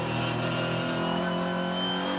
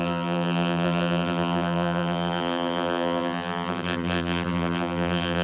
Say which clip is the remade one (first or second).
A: second